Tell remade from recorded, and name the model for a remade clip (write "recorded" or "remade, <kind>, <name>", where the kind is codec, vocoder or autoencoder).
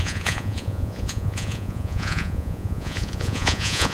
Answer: remade, vocoder, Vocos